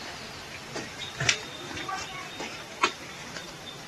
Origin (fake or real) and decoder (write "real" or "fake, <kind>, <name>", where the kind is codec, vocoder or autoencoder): real